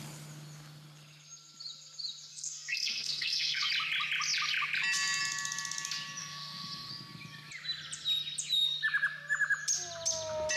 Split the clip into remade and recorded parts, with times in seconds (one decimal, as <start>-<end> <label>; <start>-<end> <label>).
0.0-2.3 recorded; 2.3-3.7 remade; 3.7-6.2 recorded; 6.2-6.9 remade; 6.9-10.6 recorded